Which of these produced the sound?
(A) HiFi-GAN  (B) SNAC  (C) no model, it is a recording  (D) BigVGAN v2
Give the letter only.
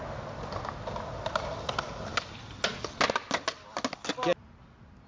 C